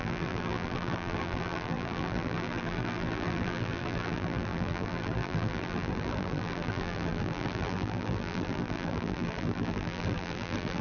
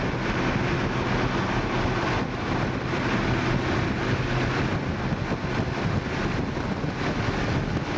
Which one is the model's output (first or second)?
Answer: first